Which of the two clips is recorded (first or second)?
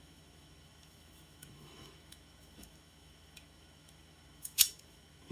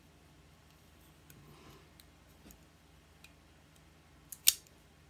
second